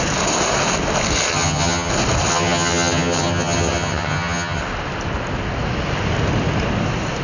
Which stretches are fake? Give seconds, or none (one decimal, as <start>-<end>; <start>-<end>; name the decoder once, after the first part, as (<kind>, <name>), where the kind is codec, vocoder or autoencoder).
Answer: 1.3-1.9 (vocoder, HiFi-GAN); 2.3-4.6